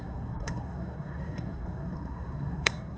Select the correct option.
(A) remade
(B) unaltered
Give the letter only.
A